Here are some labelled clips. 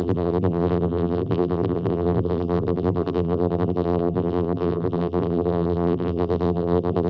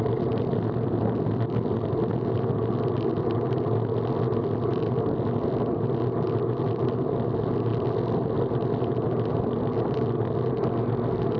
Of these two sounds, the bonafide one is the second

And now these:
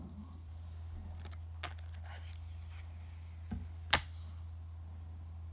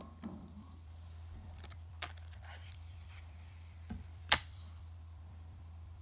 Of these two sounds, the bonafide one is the first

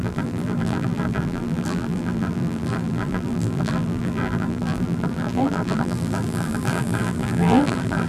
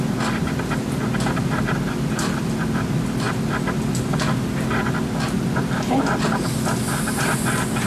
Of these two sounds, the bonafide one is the second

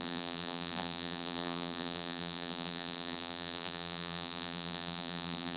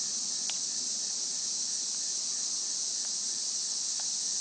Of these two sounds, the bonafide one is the second